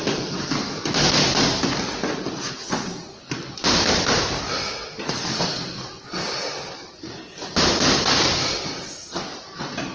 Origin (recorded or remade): recorded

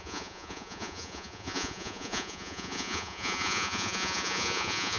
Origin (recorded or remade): remade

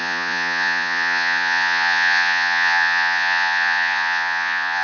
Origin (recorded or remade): remade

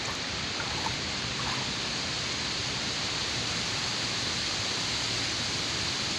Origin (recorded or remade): recorded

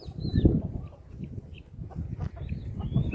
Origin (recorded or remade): recorded